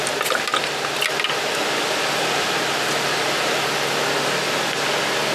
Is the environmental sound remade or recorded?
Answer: recorded